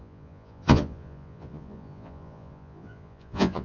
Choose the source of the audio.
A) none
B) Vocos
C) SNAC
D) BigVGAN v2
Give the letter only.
B